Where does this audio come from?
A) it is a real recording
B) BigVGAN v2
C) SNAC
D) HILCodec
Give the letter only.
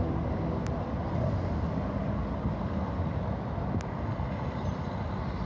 A